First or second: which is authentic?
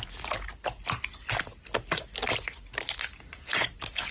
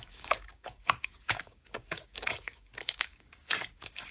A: first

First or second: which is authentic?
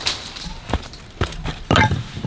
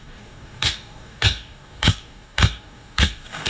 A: first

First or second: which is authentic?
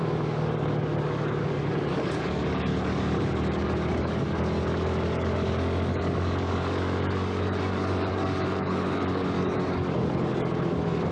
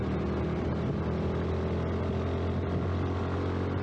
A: second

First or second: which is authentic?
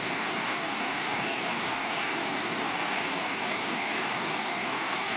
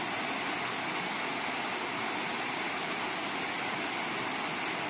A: second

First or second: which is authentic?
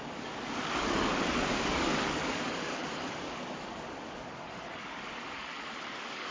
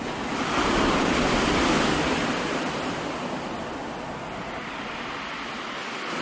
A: second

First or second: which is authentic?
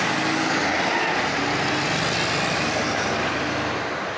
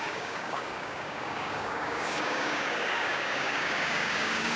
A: first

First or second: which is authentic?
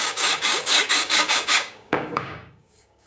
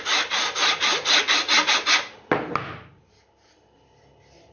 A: second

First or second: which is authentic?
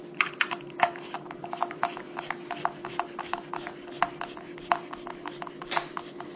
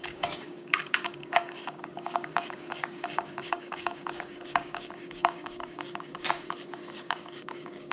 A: first